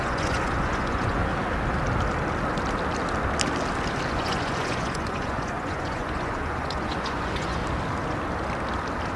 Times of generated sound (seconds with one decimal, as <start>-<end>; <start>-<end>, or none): 0.0-1.2; 4.1-7.6